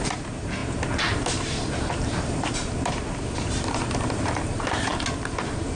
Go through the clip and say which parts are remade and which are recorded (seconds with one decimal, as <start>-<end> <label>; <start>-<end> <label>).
0.0-5.8 remade